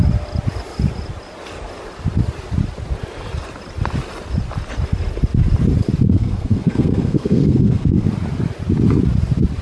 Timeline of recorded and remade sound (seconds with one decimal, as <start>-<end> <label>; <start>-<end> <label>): 0.0-6.1 recorded; 6.1-8.1 remade; 8.1-9.6 recorded